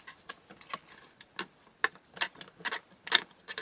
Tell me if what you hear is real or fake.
real